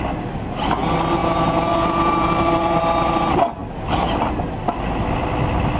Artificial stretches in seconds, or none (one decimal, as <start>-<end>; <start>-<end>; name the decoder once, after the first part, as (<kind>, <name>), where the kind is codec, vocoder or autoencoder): 1.2-2.8 (vocoder, BigVGAN v2)